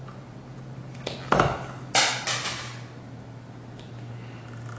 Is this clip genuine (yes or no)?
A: yes